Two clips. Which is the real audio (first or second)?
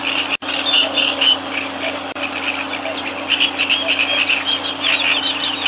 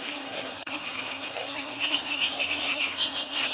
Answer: first